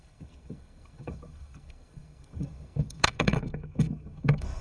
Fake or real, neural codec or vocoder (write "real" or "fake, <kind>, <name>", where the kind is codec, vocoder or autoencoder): fake, codec, SNAC